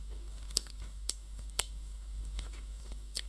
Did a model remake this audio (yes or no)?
yes